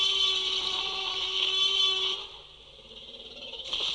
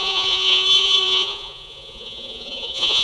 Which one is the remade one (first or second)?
second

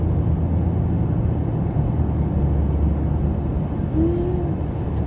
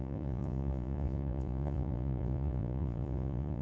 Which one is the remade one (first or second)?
second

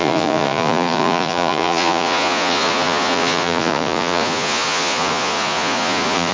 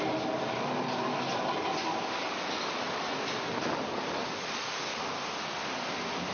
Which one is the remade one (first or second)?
first